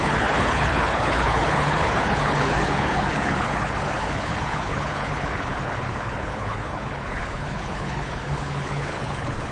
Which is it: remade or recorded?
remade